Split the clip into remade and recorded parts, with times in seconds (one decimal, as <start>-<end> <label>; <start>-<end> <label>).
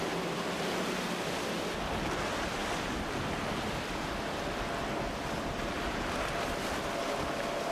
0.0-7.7 recorded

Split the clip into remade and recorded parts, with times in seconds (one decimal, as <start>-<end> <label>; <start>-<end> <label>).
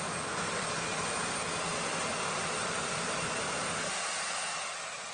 0.0-2.1 recorded; 2.1-3.9 remade; 3.9-5.1 recorded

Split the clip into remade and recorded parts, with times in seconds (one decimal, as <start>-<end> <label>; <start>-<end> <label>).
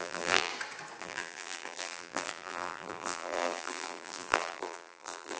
0.0-0.5 remade; 0.5-1.0 recorded; 1.0-5.4 remade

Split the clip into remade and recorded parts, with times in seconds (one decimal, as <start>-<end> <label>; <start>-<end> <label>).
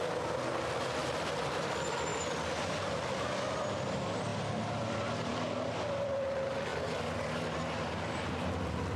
0.0-1.0 recorded; 1.0-1.7 remade; 1.7-4.3 recorded; 4.3-4.8 remade; 4.8-9.0 recorded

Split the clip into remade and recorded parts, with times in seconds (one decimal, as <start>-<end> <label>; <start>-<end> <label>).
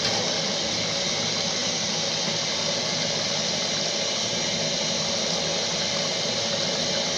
0.0-7.2 recorded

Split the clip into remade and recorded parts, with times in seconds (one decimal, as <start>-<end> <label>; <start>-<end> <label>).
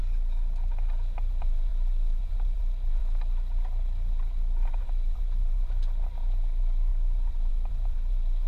0.0-1.1 recorded; 1.1-3.0 remade; 3.0-4.8 recorded; 4.8-8.5 remade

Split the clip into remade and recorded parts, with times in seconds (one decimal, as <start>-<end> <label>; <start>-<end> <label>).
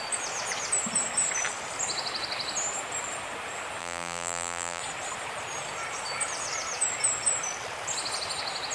0.0-3.8 recorded; 3.8-4.8 remade; 4.8-8.7 recorded